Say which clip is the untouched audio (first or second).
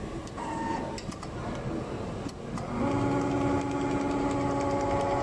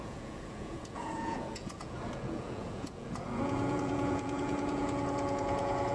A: first